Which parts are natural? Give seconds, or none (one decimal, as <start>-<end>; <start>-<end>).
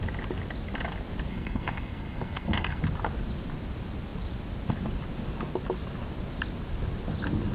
0.0-1.3; 2.8-7.5